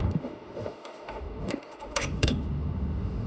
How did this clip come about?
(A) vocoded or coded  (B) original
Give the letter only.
A